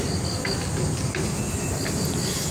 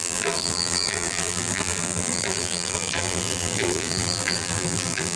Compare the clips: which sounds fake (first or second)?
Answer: second